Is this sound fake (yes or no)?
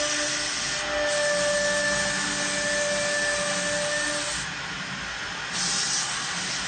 no